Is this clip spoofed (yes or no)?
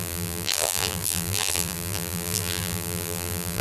yes